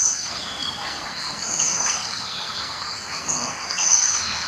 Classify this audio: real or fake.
fake